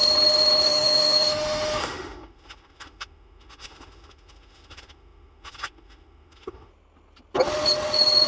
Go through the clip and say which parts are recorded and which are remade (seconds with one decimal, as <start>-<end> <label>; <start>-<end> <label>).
0.0-0.7 recorded; 0.7-6.7 remade; 6.7-8.3 recorded